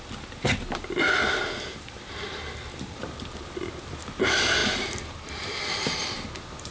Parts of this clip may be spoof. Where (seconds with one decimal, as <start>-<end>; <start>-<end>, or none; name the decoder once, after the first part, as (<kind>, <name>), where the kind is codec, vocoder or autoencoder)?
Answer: none